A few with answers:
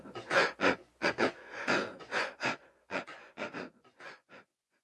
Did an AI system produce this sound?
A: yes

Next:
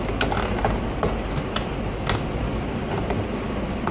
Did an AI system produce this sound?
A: no